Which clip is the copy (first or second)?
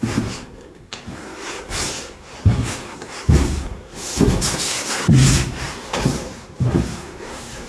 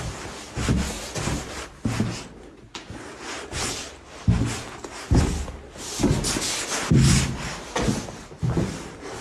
first